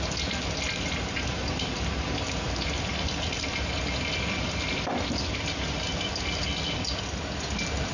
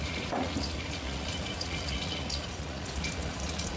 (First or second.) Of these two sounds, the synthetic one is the second